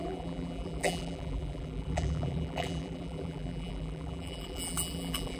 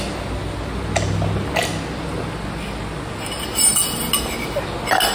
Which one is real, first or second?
second